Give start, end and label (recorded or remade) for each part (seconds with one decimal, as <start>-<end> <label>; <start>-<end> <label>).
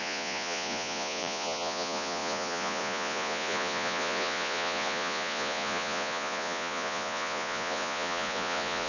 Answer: 0.0-8.9 remade